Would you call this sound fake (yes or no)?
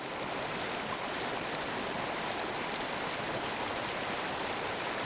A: no